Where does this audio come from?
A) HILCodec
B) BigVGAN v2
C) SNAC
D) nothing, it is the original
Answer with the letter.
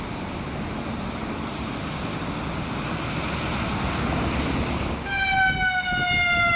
D